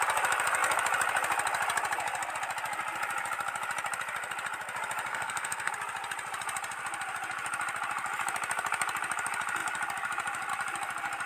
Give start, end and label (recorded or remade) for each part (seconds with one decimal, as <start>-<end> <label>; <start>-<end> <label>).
0.0-5.1 recorded; 5.1-5.7 remade; 5.7-11.3 recorded